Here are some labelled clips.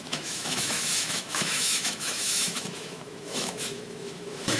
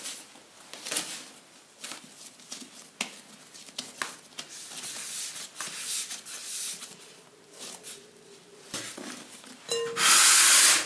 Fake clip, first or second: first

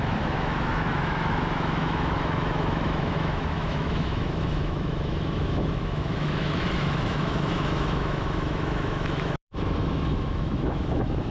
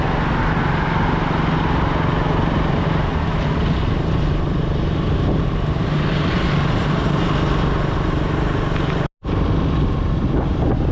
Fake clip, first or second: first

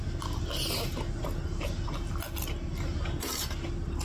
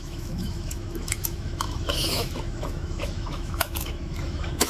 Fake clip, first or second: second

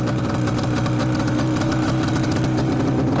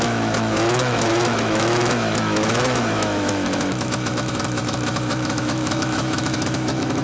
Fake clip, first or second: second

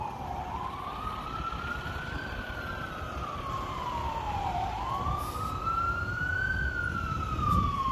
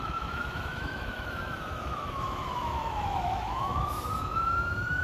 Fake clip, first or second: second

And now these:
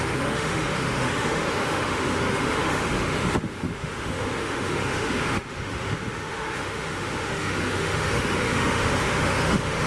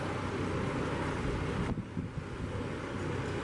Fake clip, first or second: first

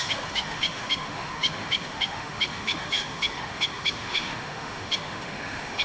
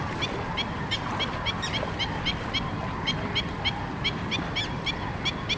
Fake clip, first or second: first